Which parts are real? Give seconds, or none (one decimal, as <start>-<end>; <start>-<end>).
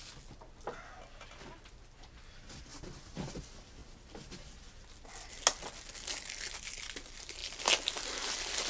0.0-8.7